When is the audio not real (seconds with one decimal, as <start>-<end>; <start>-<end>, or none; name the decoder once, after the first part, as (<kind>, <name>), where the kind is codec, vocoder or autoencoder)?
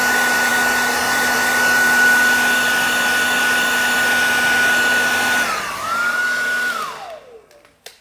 none